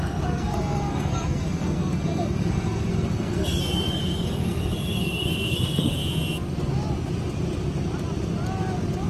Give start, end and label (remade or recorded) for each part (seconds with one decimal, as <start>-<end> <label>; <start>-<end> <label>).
0.0-6.0 remade; 6.0-9.1 recorded